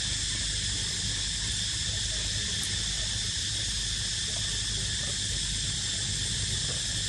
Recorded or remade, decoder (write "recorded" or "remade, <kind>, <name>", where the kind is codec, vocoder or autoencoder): recorded